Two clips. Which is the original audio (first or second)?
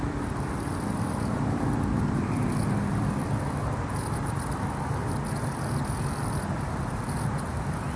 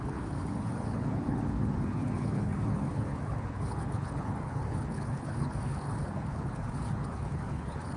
first